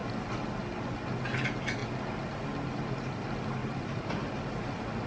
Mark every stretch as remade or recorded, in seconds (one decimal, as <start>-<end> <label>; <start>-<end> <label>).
0.0-3.6 recorded; 3.6-4.2 remade; 4.2-5.1 recorded